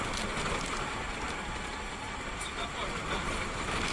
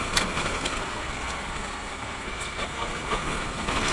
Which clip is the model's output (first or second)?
second